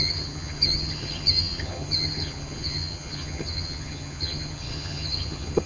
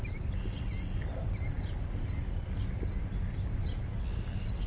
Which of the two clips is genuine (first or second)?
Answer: second